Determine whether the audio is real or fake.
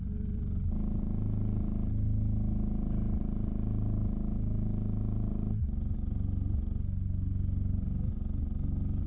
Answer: real